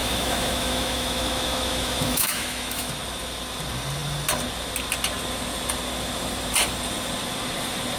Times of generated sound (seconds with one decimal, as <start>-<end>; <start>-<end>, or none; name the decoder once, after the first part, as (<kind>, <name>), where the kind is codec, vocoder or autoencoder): 0.0-2.9 (autoencoder, DAC-VAE)